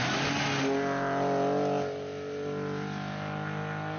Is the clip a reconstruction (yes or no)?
no